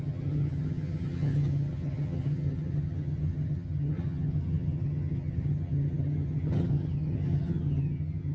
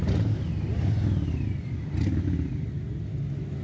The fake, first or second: first